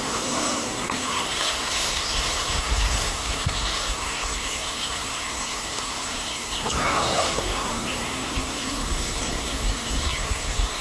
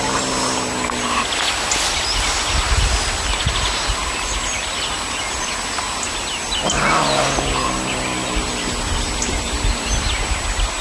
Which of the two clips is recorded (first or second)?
second